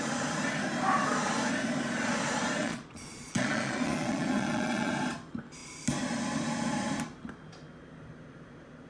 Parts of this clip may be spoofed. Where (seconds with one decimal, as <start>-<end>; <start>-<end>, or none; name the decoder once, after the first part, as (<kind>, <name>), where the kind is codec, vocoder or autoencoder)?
2.6-4.9 (vocoder, Vocos)